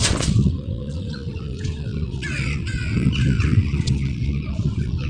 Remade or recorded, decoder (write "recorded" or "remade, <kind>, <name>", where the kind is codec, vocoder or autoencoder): remade, vocoder, WaveNeXt